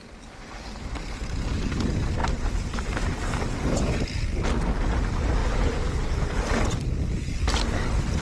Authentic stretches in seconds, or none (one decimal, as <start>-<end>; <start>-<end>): 0.0-1.2; 1.8-2.2; 3.3-8.2